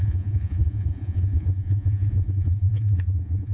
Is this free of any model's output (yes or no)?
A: no